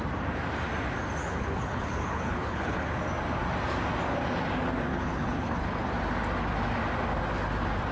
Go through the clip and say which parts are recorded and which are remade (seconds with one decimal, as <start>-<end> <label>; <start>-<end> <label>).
0.0-1.2 recorded; 1.2-2.8 remade; 2.8-4.9 recorded; 4.9-5.9 remade; 5.9-7.9 recorded